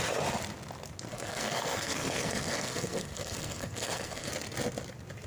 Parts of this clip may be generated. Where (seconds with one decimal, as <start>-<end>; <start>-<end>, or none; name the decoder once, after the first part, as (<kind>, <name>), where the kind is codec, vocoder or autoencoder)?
1.1-4.3 (codec, SNAC)